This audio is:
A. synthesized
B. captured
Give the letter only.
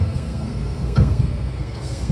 A